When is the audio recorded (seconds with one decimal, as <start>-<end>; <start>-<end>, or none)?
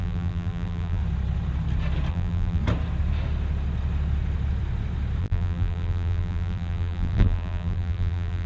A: 1.0-2.1; 2.6-5.2